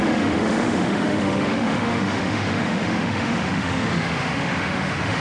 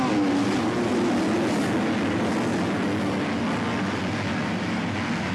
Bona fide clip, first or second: second